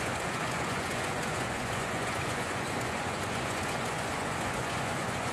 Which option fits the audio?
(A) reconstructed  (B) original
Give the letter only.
A